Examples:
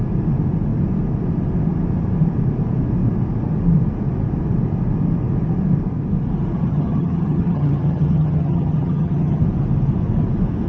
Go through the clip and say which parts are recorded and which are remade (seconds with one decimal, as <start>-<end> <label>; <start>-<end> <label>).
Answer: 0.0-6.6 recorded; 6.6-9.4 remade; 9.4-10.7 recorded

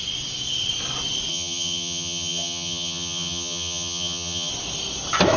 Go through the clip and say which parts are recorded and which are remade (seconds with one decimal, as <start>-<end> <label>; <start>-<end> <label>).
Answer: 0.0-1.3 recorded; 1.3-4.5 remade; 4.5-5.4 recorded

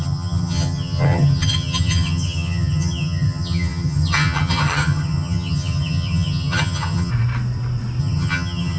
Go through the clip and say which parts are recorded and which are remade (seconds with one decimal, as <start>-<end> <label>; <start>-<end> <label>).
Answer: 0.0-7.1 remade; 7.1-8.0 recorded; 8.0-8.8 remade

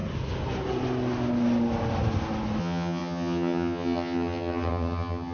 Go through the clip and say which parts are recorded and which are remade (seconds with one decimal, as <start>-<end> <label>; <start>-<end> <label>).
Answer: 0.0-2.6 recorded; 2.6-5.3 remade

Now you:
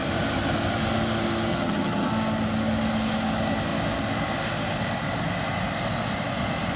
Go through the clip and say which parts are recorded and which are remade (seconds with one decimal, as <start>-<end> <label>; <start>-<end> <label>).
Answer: 0.0-1.5 recorded; 1.5-2.1 remade; 2.1-6.8 recorded

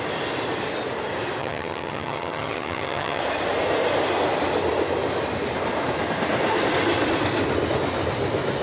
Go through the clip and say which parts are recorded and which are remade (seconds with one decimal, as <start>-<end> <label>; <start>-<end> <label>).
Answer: 0.0-1.4 recorded; 1.4-3.2 remade; 3.2-8.6 recorded

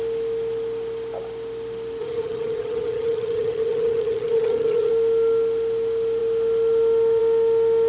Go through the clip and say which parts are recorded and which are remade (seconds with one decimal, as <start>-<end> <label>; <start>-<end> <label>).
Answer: 0.0-2.0 recorded; 2.0-4.9 remade; 4.9-7.9 recorded